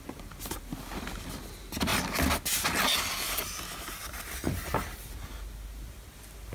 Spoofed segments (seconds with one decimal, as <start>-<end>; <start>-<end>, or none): none